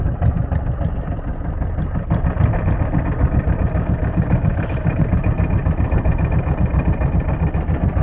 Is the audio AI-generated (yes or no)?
no